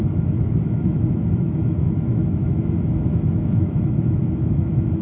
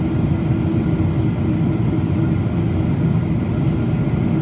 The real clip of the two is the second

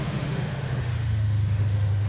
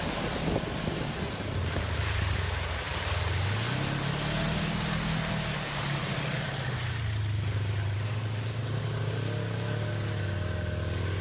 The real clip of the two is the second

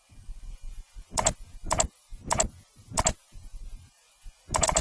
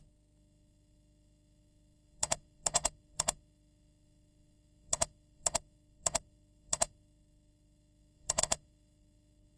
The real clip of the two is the first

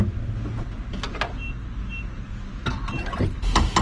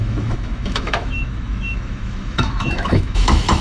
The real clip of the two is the first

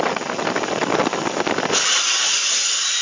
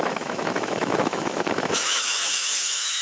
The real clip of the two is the first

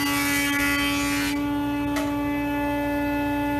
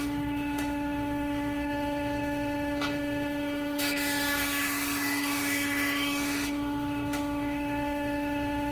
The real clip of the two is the first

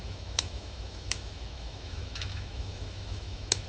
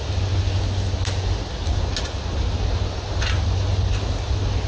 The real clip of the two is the second